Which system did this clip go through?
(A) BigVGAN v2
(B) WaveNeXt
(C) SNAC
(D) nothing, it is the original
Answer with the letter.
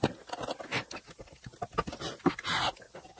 D